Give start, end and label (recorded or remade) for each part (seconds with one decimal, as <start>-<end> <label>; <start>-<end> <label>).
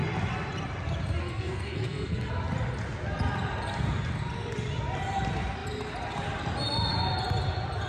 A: 0.0-1.2 recorded; 1.2-2.3 remade; 2.3-7.9 recorded